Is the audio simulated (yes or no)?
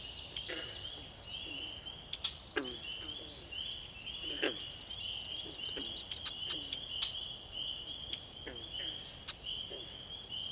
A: no